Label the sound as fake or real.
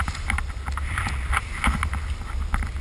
real